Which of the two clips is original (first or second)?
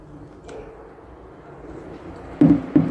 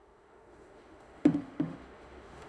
first